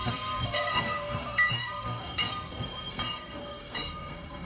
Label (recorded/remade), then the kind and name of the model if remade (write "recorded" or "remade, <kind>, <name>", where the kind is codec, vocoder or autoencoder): remade, codec, SNAC